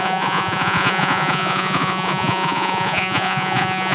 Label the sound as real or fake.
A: fake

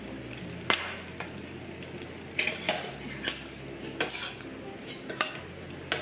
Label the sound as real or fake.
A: real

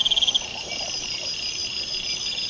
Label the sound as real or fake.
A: real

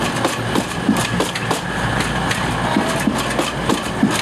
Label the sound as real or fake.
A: real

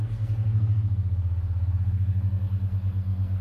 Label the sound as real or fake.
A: fake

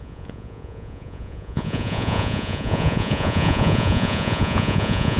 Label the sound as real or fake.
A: fake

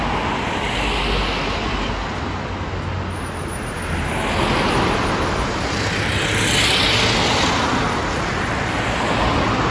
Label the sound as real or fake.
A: real